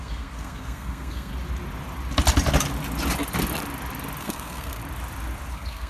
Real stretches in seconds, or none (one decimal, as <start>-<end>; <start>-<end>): 1.3-4.2; 4.8-5.5